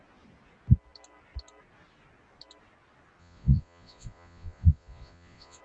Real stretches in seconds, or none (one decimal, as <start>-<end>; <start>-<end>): 0.0-3.2